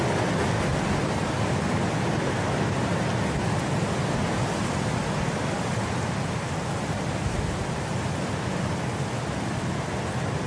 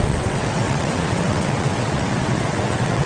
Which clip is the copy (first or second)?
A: second